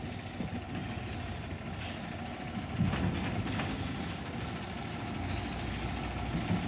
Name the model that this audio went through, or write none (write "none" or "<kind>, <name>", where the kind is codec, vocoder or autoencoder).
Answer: none